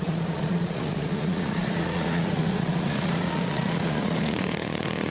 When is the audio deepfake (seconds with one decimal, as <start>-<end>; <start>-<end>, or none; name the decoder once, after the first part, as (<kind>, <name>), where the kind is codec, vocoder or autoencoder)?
0.0-5.1 (vocoder, Vocos)